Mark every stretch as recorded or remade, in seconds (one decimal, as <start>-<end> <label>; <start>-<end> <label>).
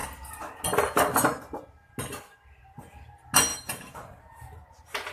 0.0-3.5 recorded; 3.5-5.1 remade